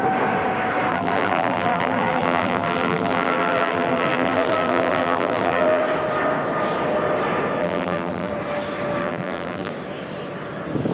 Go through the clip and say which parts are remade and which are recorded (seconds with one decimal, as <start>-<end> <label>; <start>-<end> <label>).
0.0-0.9 recorded; 0.9-5.8 remade; 5.8-7.6 recorded; 7.6-8.3 remade; 8.3-9.0 recorded; 9.0-9.7 remade; 9.7-10.9 recorded